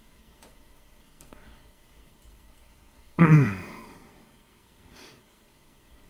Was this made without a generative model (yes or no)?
no